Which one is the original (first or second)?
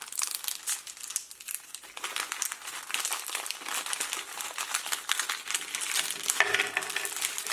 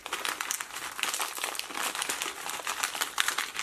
first